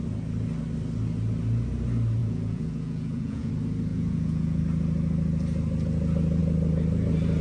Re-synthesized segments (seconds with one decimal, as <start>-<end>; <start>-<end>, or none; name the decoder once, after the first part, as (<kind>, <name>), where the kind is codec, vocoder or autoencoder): 2.2-3.5 (vocoder, Vocos); 3.9-4.6